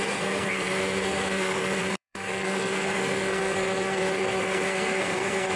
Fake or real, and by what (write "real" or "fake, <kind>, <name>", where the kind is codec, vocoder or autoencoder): fake, codec, SNAC